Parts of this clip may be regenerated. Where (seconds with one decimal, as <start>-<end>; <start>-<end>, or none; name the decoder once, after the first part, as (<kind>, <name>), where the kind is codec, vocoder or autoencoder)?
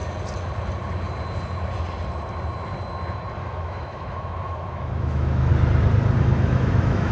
3.4-5.5 (autoencoder, DAC-VAE); 6.2-7.1